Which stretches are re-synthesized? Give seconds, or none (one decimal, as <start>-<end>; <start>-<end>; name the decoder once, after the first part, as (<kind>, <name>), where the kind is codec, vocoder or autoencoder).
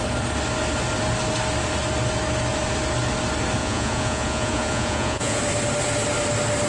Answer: 3.6-5.4 (vocoder, Vocos)